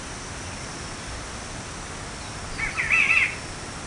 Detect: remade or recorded recorded